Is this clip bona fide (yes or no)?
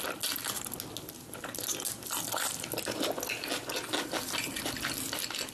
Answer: yes